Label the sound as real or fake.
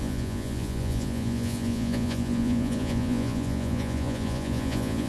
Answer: fake